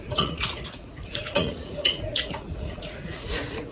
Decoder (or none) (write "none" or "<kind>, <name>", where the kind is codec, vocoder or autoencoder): vocoder, Vocos